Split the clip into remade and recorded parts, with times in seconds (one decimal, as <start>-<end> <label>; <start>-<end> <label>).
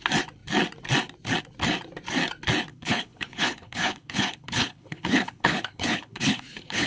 0.0-2.7 recorded; 2.7-6.9 remade